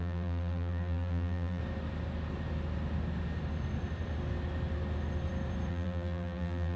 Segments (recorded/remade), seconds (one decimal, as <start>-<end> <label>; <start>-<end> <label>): 0.0-1.6 remade; 1.6-5.7 recorded; 5.7-6.8 remade